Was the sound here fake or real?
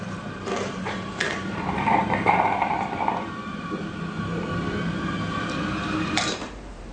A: fake